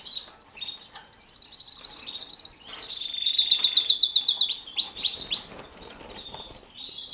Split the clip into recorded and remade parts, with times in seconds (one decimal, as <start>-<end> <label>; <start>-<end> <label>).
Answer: 0.0-7.1 recorded